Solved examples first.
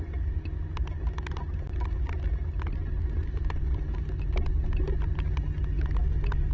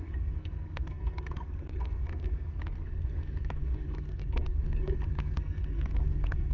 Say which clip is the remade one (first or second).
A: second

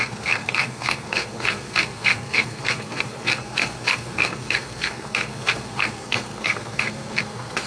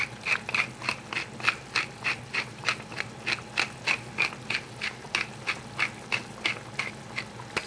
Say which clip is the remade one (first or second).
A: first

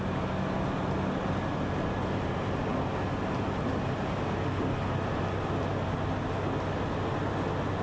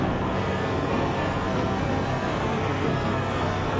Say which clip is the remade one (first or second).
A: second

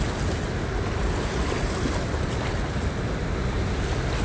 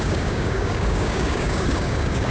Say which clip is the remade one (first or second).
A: second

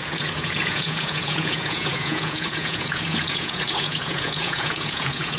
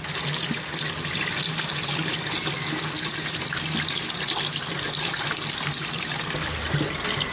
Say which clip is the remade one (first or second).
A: first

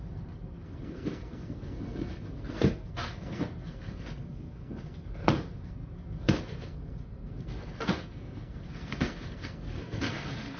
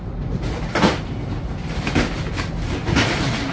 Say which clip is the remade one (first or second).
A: first